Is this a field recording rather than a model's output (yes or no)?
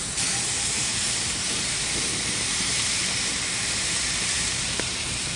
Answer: no